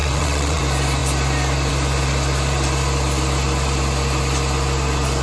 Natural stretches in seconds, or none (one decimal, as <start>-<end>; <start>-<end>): 0.6-5.2